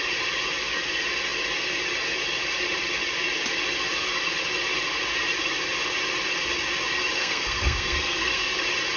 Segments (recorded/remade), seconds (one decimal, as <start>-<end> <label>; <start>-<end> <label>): 0.0-7.2 recorded; 7.2-8.6 remade; 8.6-9.0 recorded